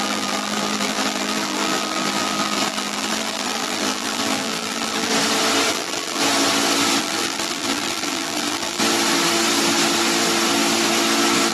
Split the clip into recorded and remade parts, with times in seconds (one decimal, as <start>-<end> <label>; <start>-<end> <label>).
0.0-5.1 remade; 5.1-5.7 recorded; 5.7-6.2 remade; 6.2-7.0 recorded; 7.0-8.8 remade; 8.8-11.5 recorded

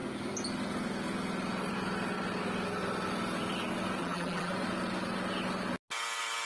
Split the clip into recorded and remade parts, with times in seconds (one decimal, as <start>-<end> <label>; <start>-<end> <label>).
0.0-4.0 recorded; 4.0-4.5 remade; 4.5-6.4 recorded

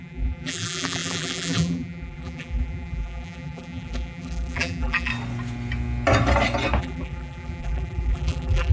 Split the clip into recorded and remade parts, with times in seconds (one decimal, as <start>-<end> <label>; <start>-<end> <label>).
0.0-5.1 remade; 5.1-6.8 recorded; 6.8-8.7 remade

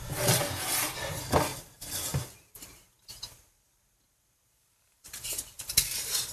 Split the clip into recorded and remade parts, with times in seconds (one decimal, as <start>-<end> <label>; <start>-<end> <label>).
0.0-2.7 recorded; 2.7-6.3 remade

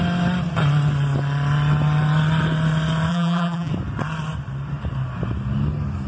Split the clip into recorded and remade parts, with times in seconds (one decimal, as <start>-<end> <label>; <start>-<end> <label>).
0.0-3.1 recorded; 3.1-3.7 remade; 3.7-6.1 recorded

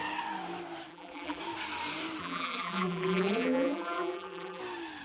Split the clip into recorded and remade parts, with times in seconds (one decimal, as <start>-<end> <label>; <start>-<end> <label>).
0.0-0.9 recorded; 0.9-1.4 remade; 1.4-2.2 recorded; 2.2-4.6 remade; 4.6-5.0 recorded